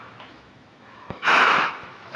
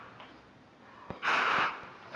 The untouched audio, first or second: second